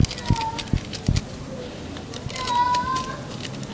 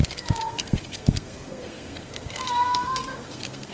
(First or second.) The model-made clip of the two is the second